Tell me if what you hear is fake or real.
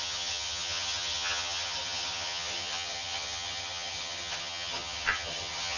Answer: fake